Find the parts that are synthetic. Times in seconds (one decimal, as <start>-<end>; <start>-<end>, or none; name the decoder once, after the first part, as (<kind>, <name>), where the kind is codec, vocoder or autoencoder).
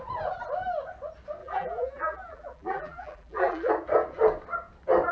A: 1.4-3.7 (vocoder, BigVGAN v2)